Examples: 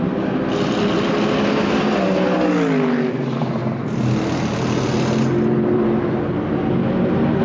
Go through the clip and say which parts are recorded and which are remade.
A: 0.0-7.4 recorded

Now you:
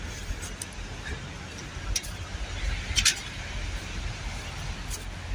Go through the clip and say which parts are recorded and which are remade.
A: 0.0-5.3 recorded

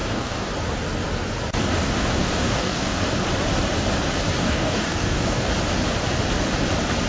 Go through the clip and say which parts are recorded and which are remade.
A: 0.0-0.5 remade; 0.5-2.2 recorded; 2.2-3.0 remade; 3.0-4.4 recorded; 4.4-5.5 remade; 5.5-7.1 recorded